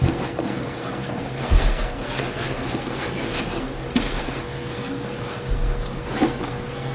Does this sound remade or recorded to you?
remade